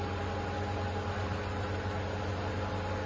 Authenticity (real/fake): real